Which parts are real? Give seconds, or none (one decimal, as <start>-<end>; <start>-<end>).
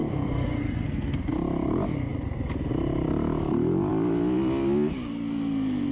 1.2-5.9